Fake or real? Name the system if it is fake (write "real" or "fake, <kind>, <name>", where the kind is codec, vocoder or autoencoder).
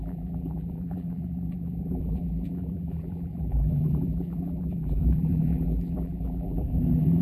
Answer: fake, vocoder, BigVGAN v2